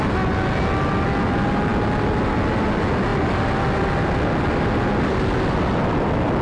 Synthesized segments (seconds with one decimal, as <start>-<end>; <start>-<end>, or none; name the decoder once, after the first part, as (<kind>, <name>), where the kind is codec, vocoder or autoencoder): none